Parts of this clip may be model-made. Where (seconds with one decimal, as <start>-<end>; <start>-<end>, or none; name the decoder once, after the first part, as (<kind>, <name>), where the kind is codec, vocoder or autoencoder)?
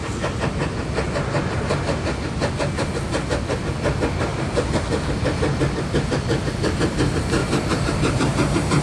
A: 4.3-5.2 (vocoder, BigVGAN v2); 7.4-8.8